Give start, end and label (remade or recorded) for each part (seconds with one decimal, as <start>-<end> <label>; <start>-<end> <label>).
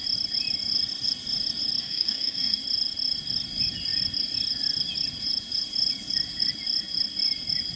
0.0-1.8 recorded; 1.8-2.6 remade; 2.6-7.8 recorded